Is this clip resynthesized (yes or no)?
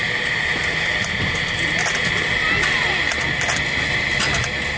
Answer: no